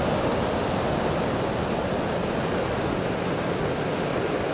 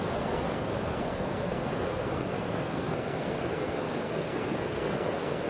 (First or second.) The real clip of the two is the first